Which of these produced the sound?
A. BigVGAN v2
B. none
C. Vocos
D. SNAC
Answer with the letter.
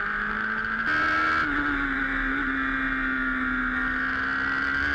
B